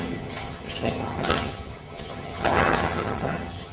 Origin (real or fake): fake